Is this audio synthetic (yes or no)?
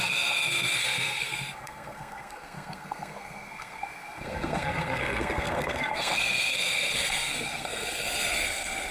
yes